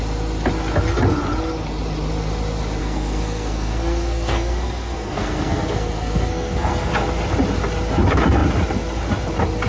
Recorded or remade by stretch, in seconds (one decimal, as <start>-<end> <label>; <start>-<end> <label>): 0.0-2.8 recorded; 2.8-6.9 remade; 6.9-9.7 recorded